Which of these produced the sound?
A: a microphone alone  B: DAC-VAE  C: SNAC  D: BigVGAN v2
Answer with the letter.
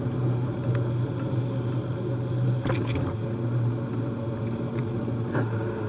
A